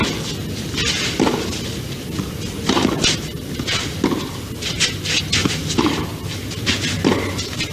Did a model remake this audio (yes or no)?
no